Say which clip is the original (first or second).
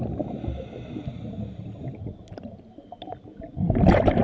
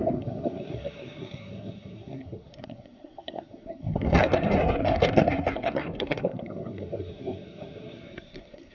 first